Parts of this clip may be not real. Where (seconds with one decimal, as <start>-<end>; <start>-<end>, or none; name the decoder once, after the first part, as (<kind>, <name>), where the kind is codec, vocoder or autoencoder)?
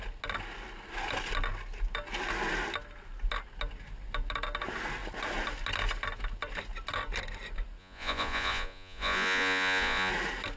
7.8-10.1 (vocoder, Vocos)